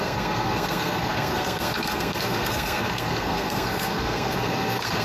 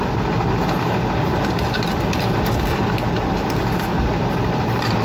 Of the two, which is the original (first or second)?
second